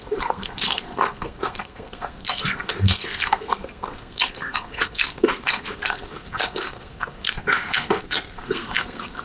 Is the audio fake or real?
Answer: fake